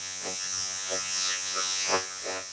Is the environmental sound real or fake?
fake